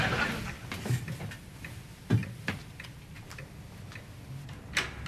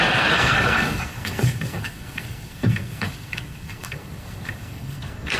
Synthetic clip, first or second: second